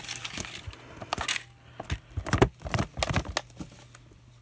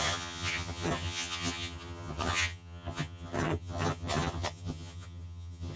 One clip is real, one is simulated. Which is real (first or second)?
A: first